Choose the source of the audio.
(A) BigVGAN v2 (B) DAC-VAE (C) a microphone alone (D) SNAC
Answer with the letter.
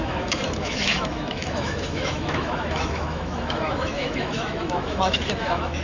B